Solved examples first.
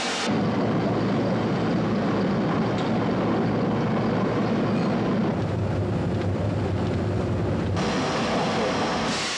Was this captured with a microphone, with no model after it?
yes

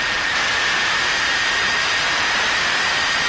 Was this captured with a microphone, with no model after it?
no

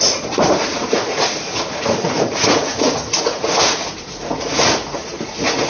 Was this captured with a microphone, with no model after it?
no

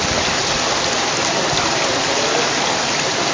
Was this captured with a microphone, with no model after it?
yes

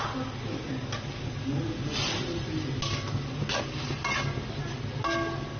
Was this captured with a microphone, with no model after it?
yes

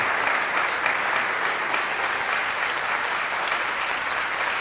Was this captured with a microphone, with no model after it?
yes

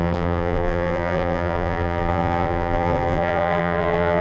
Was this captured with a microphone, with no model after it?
no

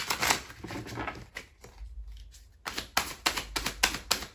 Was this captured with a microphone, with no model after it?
yes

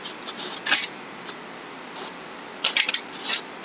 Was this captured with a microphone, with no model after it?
yes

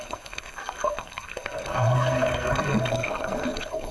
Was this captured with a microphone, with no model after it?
no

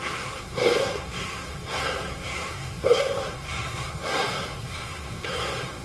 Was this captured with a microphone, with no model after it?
no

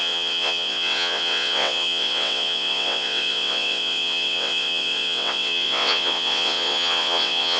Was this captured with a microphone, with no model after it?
no